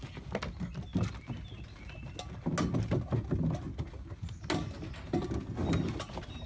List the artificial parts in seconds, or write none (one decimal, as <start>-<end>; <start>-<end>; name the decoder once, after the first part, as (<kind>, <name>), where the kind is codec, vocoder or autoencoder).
none